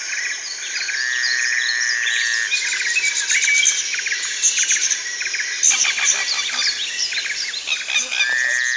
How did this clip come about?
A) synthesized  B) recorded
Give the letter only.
B